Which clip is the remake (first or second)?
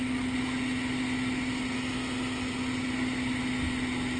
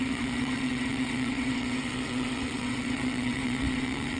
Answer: second